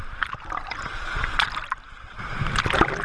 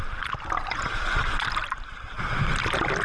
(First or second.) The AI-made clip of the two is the second